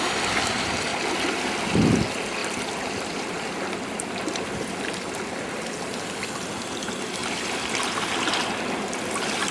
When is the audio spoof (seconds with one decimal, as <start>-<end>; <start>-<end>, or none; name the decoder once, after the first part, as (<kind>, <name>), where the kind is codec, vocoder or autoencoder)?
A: 2.4-4.8 (vocoder, BigVGAN v2)